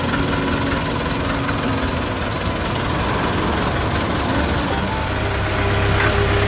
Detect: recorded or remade recorded